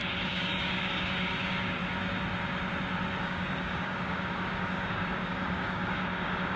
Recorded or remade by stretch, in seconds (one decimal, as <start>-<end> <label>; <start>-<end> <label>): 0.0-1.8 remade; 1.8-3.2 recorded; 3.2-6.6 remade